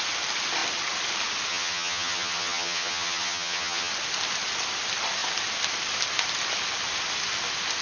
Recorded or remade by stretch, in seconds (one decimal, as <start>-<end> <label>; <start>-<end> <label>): 0.0-1.5 recorded; 1.5-3.9 remade; 3.9-7.8 recorded